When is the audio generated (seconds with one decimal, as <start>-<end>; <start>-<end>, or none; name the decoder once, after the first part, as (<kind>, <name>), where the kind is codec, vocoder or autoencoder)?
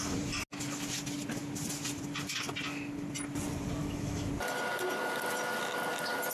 3.8-4.3 (autoencoder, DAC-VAE)